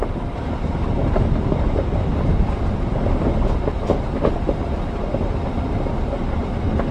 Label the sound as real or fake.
real